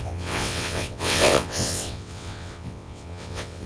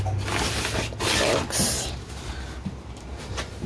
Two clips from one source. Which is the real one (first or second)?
second